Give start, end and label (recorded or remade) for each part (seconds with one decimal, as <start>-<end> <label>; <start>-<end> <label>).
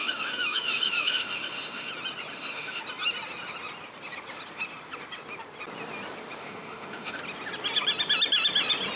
0.0-1.9 remade; 1.9-2.3 recorded; 2.3-2.8 remade; 2.8-6.4 recorded; 6.4-7.2 remade; 7.2-9.0 recorded